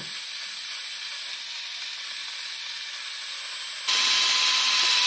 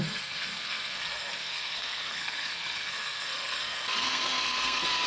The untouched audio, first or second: first